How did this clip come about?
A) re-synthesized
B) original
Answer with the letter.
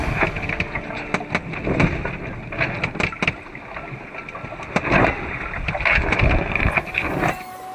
B